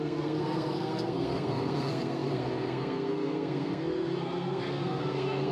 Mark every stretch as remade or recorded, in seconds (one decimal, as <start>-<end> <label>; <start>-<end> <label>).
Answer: 0.0-5.5 remade